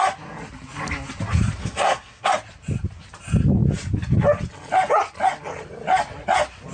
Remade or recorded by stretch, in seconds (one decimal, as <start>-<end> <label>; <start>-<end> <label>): 0.0-1.6 recorded; 1.6-2.3 remade; 2.3-6.7 recorded